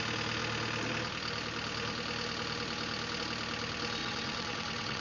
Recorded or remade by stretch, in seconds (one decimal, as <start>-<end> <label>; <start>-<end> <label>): 0.0-4.0 recorded; 4.0-5.0 remade